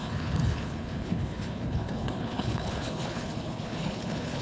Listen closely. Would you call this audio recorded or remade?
remade